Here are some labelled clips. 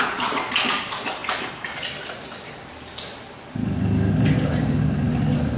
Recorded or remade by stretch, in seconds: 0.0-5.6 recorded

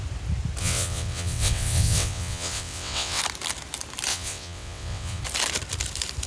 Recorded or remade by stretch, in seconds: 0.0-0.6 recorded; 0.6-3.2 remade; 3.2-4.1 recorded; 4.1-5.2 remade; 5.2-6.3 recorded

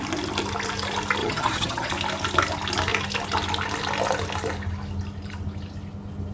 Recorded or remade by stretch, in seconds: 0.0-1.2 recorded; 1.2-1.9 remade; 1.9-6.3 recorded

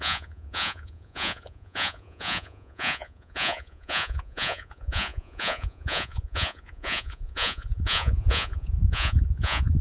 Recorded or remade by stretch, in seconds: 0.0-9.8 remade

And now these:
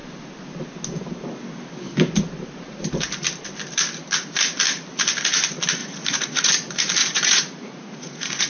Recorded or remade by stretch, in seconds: 0.0-5.8 recorded; 5.8-6.5 remade; 6.5-7.0 recorded; 7.0-8.5 remade

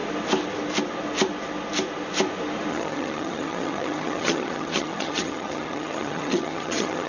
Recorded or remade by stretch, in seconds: 0.0-2.7 recorded; 2.7-7.1 remade

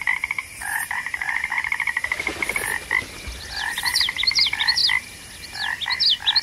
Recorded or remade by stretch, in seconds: 0.0-2.3 remade; 2.3-3.4 recorded; 3.4-4.8 remade; 4.8-6.4 recorded